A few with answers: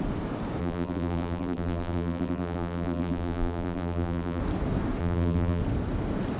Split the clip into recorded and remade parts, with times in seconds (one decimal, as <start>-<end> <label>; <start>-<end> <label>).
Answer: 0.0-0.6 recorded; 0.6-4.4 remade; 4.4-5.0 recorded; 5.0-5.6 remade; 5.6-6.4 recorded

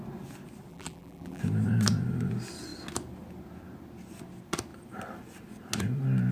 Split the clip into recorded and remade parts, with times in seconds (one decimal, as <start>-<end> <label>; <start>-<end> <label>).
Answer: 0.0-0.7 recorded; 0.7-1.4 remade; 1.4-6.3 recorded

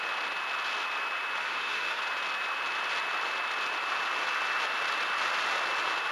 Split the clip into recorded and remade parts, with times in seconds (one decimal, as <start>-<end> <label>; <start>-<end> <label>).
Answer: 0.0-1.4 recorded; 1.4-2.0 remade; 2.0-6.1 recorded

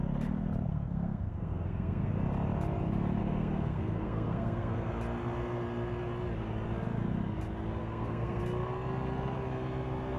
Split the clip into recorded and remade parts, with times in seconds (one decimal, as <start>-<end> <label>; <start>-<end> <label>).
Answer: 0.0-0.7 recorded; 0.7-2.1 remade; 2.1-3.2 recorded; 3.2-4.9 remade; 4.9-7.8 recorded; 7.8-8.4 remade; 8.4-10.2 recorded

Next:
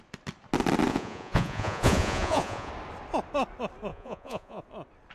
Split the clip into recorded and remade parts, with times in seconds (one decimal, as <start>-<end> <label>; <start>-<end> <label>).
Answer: 0.0-0.9 recorded; 0.9-2.7 remade; 2.7-3.9 recorded; 3.9-4.6 remade; 4.6-5.1 recorded

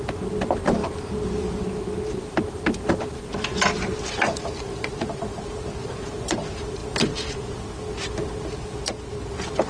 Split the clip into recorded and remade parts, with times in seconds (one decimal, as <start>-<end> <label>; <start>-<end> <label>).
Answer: 0.0-9.7 recorded

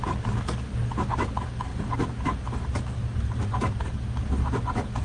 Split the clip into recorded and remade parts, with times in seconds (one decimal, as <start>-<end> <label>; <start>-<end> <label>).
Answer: 0.0-5.0 recorded

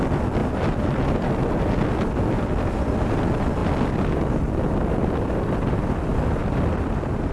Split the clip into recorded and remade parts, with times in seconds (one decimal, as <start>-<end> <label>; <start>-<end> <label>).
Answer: 0.0-7.3 recorded